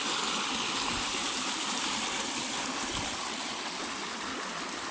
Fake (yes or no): no